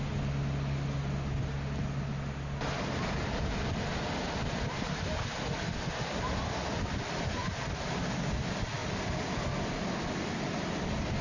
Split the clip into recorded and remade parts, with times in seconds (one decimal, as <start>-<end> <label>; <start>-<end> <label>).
0.0-7.4 recorded; 7.4-8.0 remade; 8.0-8.8 recorded; 8.8-9.3 remade; 9.3-11.2 recorded